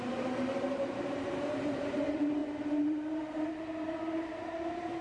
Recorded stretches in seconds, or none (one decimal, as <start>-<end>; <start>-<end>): none